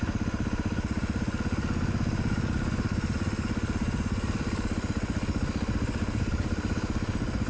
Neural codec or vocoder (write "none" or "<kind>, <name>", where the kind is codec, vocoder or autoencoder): none